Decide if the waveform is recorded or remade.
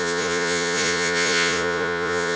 remade